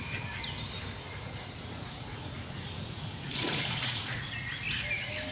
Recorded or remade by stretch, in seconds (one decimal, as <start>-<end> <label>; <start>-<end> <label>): 0.0-1.4 recorded; 1.4-4.6 remade; 4.6-5.3 recorded